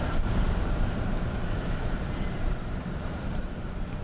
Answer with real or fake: fake